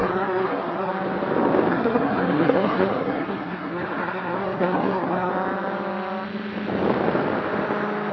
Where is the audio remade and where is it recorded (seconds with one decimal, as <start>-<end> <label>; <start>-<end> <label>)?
0.0-0.9 remade; 0.9-1.7 recorded; 1.7-5.3 remade; 5.3-8.1 recorded

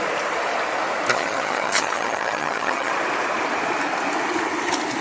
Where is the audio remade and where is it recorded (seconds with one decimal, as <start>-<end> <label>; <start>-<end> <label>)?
0.0-1.1 recorded; 1.1-2.9 remade; 2.9-5.0 recorded